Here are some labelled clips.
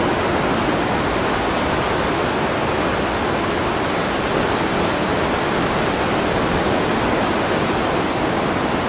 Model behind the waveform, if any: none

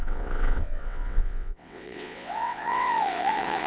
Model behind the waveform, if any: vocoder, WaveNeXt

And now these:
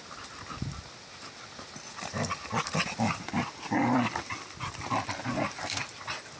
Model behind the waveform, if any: none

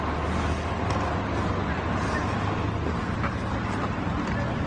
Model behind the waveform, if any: none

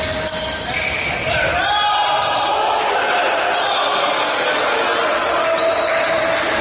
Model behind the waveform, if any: none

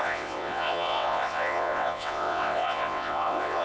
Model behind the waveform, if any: vocoder, WaveNeXt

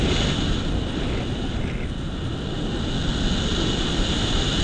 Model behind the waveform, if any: none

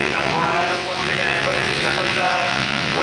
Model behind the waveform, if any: vocoder, WaveNeXt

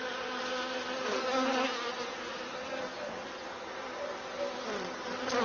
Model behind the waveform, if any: none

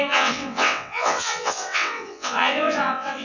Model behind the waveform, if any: vocoder, WaveNeXt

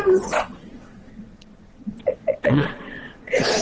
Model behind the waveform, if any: vocoder, WaveNeXt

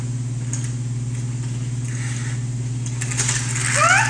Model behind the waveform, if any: none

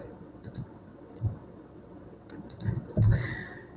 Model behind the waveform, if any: vocoder, WaveNeXt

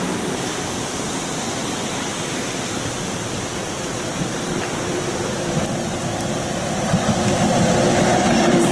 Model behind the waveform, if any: none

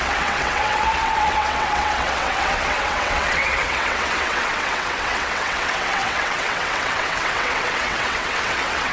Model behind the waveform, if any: vocoder, WaveNeXt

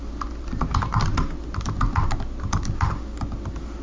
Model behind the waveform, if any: none